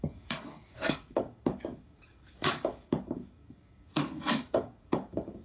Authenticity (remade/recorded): remade